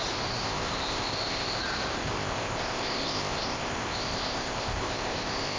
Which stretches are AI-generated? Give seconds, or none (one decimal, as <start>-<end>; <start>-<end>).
0.4-1.6; 2.0-5.6